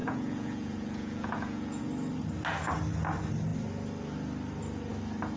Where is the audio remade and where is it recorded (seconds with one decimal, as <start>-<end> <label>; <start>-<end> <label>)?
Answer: 0.0-1.8 remade; 1.8-5.4 recorded